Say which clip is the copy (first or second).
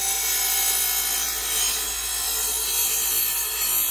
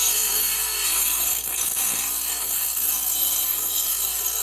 second